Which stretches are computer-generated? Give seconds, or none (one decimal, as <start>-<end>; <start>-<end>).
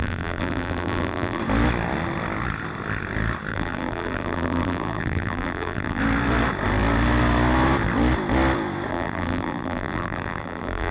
0.0-1.4; 3.5-6.0; 8.9-10.9